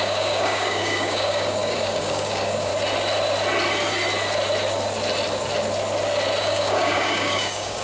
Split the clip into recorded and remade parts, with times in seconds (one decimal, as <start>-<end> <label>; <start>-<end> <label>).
0.0-2.7 remade; 2.7-6.4 recorded; 6.4-7.8 remade